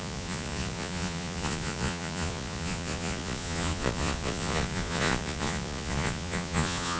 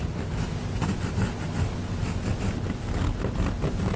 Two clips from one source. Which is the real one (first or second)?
second